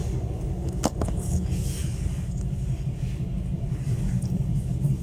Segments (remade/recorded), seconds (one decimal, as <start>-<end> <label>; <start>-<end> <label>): 0.0-5.0 remade